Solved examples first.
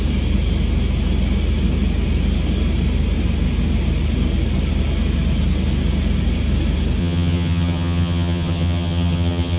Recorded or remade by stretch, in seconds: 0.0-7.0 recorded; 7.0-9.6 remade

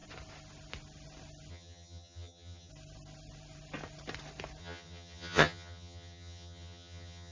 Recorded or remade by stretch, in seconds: 0.0-1.5 recorded; 1.5-2.7 remade; 2.7-4.6 recorded; 4.6-7.3 remade